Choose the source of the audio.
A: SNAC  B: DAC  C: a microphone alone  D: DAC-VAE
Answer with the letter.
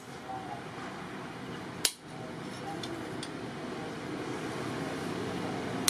C